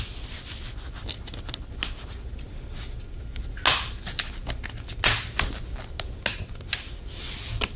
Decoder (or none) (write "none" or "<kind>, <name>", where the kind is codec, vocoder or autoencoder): none